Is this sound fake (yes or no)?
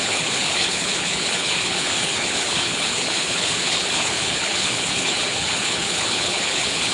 yes